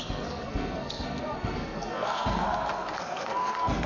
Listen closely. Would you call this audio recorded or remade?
remade